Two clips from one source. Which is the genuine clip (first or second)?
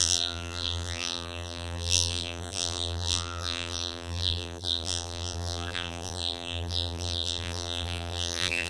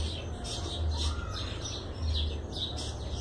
second